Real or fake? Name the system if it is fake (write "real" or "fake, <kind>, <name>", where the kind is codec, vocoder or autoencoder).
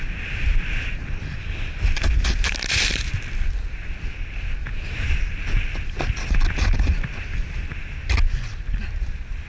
real